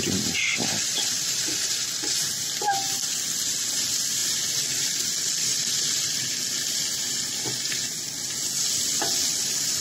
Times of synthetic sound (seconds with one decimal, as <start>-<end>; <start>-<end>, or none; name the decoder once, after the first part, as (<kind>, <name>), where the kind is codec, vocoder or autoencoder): 0.5-1.9 (vocoder, BigVGAN v2); 5.5-6.3